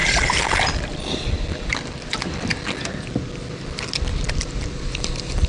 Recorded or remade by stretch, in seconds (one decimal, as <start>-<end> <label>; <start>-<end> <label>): 0.0-1.7 remade; 1.7-4.4 recorded; 4.4-5.5 remade